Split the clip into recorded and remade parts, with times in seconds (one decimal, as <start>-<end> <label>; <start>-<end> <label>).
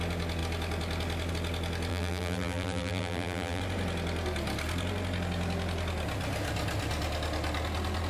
0.0-1.9 recorded; 1.9-3.6 remade; 3.6-8.1 recorded